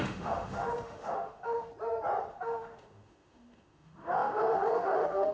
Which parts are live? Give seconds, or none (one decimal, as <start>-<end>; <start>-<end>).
1.7-2.3